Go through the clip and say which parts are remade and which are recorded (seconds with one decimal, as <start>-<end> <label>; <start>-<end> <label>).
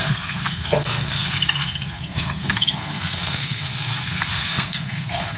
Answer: 0.0-5.4 remade